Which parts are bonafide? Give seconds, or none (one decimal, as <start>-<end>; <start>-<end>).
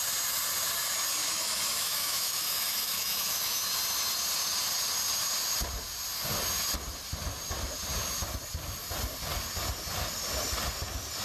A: 0.0-1.2; 3.7-11.2